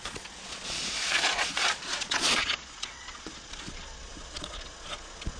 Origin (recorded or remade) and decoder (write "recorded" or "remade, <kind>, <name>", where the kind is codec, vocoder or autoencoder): remade, vocoder, Vocos